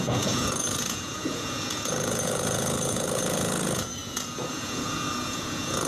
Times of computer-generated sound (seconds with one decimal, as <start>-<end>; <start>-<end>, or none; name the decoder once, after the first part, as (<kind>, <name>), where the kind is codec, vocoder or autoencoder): 0.0-5.9 (vocoder, Vocos)